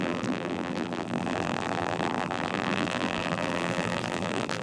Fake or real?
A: fake